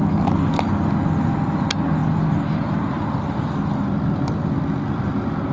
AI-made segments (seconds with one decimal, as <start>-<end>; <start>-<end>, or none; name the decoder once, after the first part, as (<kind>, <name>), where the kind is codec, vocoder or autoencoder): none